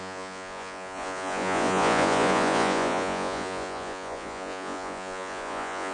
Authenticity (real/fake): fake